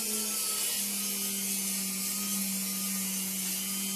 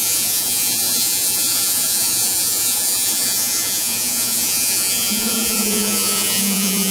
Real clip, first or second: first